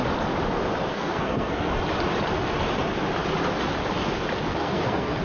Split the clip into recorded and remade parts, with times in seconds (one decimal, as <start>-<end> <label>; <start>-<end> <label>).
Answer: 0.0-0.9 recorded; 0.9-1.7 remade; 1.7-4.5 recorded; 4.5-5.2 remade